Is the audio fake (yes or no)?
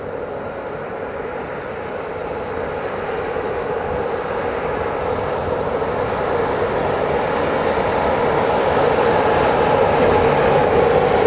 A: no